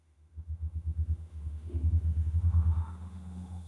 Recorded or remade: remade